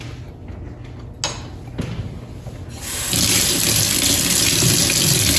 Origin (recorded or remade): recorded